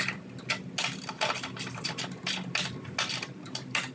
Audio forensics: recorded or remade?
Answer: recorded